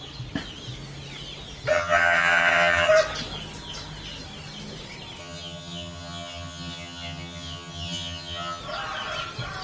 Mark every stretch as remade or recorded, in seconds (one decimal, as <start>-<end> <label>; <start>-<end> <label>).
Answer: 0.0-1.7 recorded; 1.7-2.9 remade; 2.9-5.2 recorded; 5.2-8.6 remade; 8.6-9.6 recorded